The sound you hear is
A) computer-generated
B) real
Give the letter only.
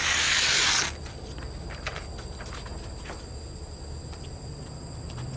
B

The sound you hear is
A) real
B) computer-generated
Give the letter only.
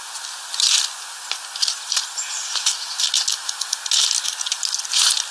A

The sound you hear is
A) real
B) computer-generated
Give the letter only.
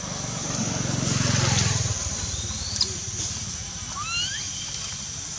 A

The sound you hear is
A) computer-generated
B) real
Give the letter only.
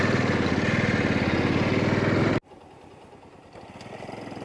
B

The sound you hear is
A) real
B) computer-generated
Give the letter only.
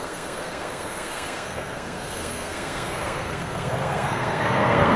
B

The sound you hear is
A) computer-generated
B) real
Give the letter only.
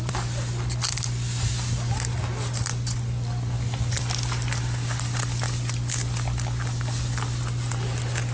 B